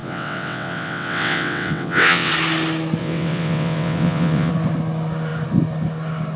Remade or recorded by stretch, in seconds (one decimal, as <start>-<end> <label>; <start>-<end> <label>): 0.0-2.3 remade; 2.3-3.0 recorded; 3.0-4.5 remade; 4.5-6.4 recorded